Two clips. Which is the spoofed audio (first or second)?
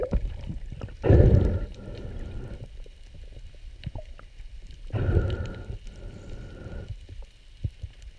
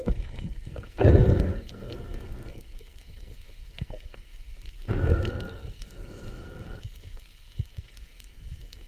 second